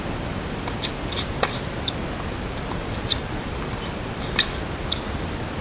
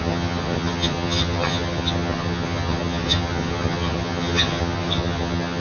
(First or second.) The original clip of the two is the first